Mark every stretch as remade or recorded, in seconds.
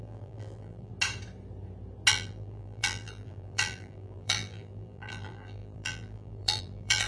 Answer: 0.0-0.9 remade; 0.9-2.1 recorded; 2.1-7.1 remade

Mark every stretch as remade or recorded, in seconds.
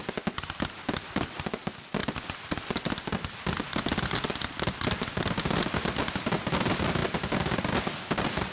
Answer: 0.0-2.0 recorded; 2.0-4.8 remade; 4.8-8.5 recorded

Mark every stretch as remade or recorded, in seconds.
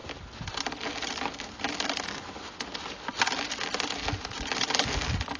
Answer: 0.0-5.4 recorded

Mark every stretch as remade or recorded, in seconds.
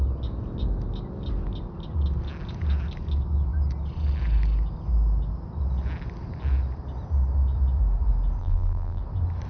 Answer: 0.0-8.4 recorded; 8.4-9.0 remade; 9.0-9.5 recorded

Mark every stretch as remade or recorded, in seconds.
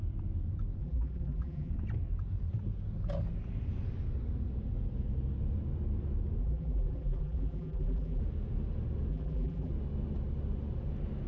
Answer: 0.0-0.8 recorded; 0.8-1.7 remade; 1.7-6.4 recorded; 6.4-8.2 remade; 8.2-9.1 recorded; 9.1-9.7 remade; 9.7-11.3 recorded